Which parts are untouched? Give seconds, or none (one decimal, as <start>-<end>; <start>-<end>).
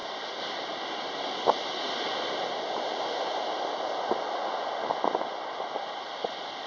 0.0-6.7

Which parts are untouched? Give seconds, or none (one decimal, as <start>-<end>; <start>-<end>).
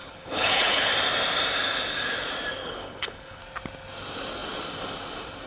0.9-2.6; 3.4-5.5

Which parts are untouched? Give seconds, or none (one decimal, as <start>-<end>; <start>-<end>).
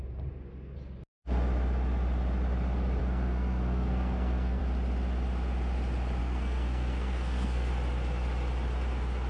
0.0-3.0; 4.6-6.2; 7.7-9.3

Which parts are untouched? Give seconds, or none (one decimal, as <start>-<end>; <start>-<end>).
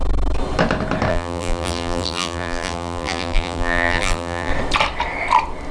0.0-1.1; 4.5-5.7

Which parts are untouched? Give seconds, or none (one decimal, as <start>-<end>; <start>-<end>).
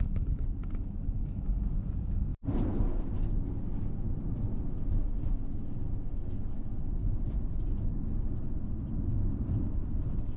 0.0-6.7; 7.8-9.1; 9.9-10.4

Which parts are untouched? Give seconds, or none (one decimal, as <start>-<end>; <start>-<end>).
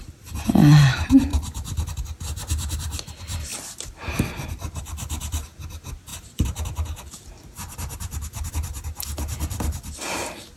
0.0-1.3; 1.9-3.5; 4.8-6.1; 8.5-10.6